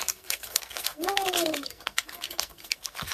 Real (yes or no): no